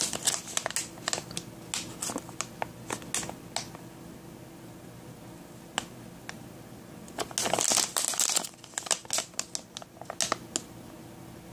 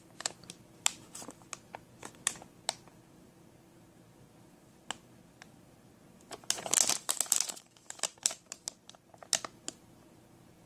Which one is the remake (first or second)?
second